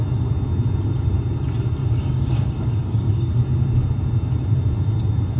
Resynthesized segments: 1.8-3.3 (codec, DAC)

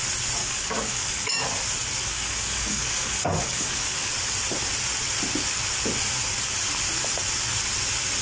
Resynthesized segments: 0.4-1.4 (codec, DAC); 2.0-4.1

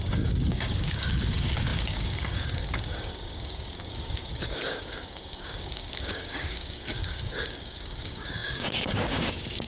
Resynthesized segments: 0.0-9.7 (codec, DAC)

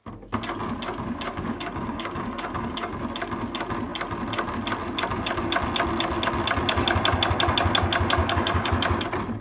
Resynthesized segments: 1.3-2.9 (codec, DAC); 8.2-8.7

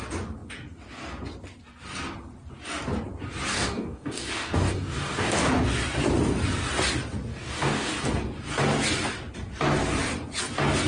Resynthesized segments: 3.5-5.5 (codec, DAC); 7.3-7.9

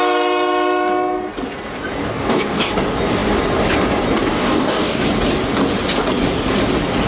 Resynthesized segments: 2.0-2.7 (codec, DAC); 4.3-5.0

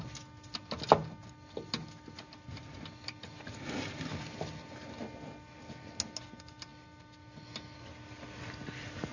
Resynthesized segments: none

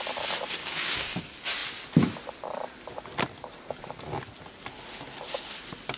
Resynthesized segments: 0.6-1.2 (codec, DAC)